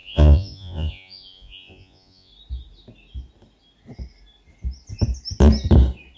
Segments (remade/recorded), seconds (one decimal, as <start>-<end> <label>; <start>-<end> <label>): 0.0-2.3 remade; 2.3-6.2 recorded